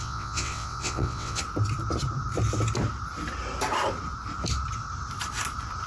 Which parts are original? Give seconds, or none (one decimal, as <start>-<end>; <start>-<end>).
1.4-5.9